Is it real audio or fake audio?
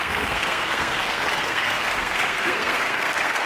fake